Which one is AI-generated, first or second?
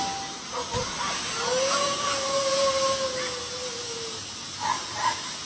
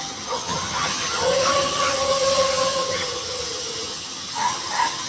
second